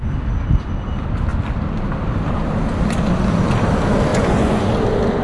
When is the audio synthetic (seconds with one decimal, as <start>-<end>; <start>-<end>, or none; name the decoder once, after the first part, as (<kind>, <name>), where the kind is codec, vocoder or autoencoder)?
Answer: 4.1-4.7 (vocoder, Vocos)